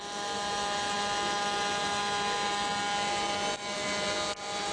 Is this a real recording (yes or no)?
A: yes